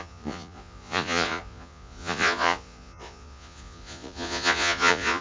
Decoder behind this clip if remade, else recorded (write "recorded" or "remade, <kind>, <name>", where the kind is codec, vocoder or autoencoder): remade, vocoder, Vocos